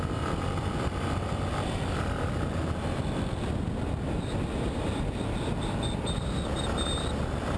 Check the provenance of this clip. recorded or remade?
recorded